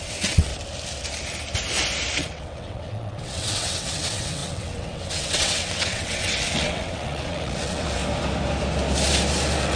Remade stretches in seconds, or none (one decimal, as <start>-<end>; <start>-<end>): 0.0-0.5; 2.2-8.0